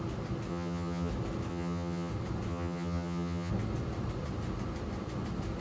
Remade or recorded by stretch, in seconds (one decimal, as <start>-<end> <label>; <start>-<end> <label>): 0.0-0.5 recorded; 0.5-1.1 remade; 1.1-1.5 recorded; 1.5-2.1 remade; 2.1-2.5 recorded; 2.5-3.5 remade; 3.5-5.6 recorded